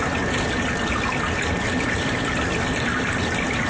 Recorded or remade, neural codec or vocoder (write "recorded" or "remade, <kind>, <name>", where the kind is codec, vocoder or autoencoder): recorded